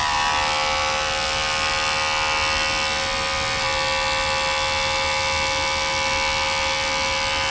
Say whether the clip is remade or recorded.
recorded